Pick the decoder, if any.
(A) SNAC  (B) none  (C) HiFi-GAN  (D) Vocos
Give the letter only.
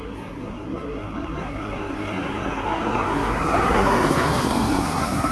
A